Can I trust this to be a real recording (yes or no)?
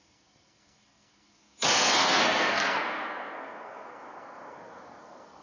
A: no